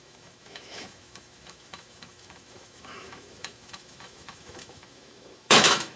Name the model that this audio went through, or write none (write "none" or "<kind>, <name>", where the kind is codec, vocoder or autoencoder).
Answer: autoencoder, DAC-VAE